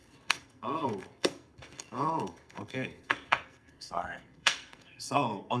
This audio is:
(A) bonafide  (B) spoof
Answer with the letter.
B